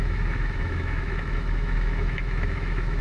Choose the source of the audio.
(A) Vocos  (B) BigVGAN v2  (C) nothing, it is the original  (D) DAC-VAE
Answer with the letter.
D